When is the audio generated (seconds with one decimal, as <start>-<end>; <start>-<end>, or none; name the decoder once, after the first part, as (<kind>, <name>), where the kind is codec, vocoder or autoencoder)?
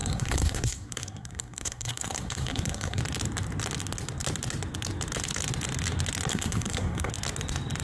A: 0.0-3.0 (codec, SNAC); 6.3-7.1